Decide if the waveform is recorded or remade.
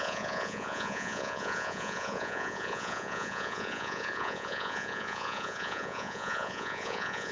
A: remade